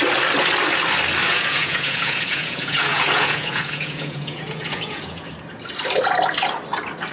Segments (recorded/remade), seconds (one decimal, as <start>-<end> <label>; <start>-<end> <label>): 0.0-1.3 recorded; 1.3-5.3 remade; 5.3-7.1 recorded

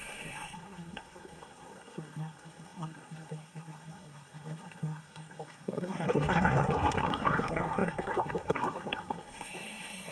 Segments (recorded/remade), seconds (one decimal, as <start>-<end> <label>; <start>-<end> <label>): 0.0-10.1 remade

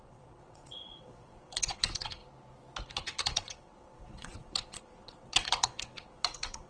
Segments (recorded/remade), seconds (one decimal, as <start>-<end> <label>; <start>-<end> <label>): 0.0-2.2 remade; 2.2-2.9 recorded; 2.9-6.7 remade

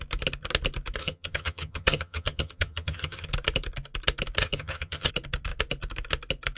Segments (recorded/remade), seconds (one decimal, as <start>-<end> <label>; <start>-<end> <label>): 0.0-1.0 recorded; 1.0-3.3 remade; 3.3-4.4 recorded; 4.4-5.1 remade; 5.1-6.6 recorded

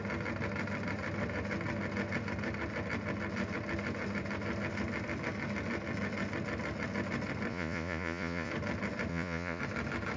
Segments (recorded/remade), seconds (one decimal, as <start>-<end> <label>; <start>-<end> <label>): 0.0-7.5 recorded; 7.5-8.5 remade; 8.5-9.1 recorded; 9.1-9.6 remade; 9.6-10.2 recorded